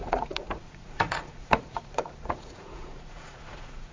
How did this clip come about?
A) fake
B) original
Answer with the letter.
A